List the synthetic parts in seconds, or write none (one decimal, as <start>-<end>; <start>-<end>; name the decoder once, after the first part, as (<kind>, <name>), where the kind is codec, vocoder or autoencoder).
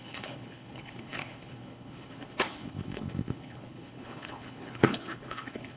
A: 0.0-5.8 (codec, HILCodec)